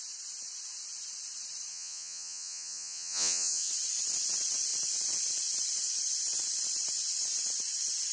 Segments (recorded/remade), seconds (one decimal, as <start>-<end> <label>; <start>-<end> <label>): 0.0-1.7 recorded; 1.7-3.7 remade; 3.7-8.1 recorded